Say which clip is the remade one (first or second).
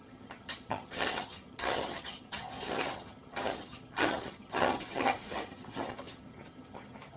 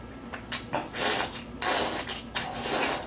first